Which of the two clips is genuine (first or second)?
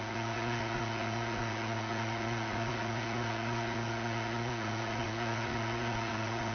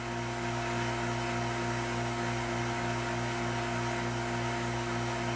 second